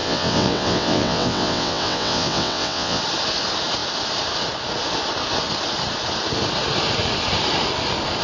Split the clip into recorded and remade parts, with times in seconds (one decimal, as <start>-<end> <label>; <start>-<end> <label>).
0.0-3.0 remade; 3.0-8.2 recorded